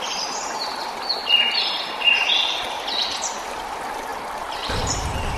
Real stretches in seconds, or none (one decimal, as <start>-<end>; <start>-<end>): 0.0-1.2; 2.4-4.1